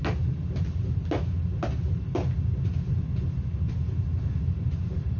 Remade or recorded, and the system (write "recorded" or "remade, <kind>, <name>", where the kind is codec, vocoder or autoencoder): recorded